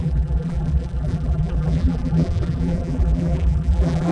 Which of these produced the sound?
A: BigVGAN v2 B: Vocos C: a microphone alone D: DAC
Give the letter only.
A